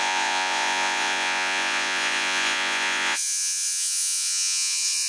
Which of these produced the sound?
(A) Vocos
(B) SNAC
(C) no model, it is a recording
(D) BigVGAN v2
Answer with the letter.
A